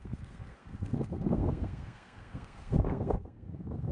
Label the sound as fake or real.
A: fake